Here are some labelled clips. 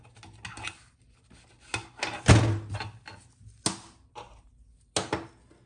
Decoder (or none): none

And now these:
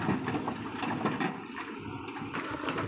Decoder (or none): none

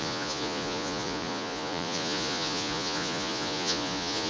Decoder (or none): vocoder, Vocos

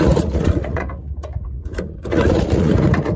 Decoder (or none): vocoder, Vocos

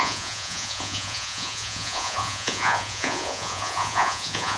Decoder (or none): vocoder, Vocos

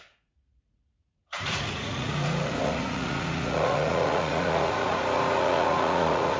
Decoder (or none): vocoder, Vocos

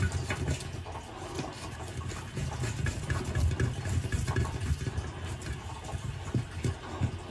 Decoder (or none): none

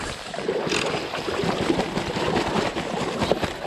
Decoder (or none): none